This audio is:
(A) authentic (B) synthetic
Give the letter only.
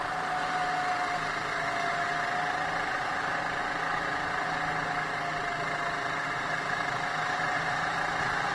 A